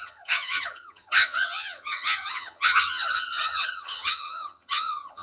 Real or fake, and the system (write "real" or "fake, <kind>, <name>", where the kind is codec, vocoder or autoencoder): fake, vocoder, HiFi-GAN